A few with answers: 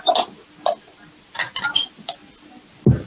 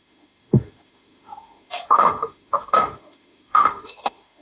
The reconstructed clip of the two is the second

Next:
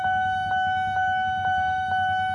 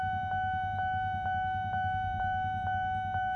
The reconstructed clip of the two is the first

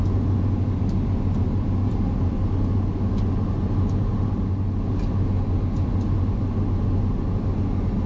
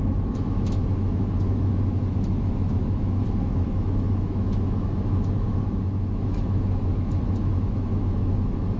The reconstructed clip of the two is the second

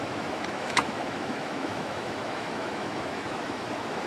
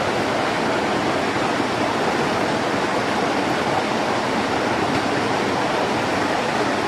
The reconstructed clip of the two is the first